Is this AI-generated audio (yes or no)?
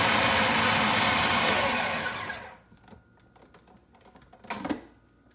no